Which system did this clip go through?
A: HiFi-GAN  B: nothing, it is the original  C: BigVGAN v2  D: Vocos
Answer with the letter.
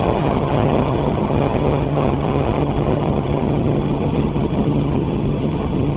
A